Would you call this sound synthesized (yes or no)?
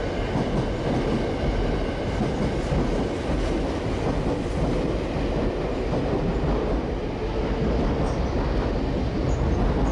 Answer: no